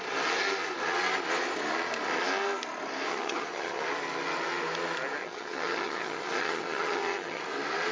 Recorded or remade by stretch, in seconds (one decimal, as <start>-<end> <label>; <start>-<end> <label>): 0.0-3.1 recorded; 3.1-3.8 remade; 3.8-5.2 recorded; 5.2-7.4 remade; 7.4-7.9 recorded